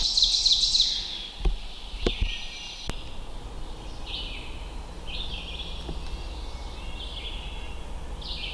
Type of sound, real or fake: real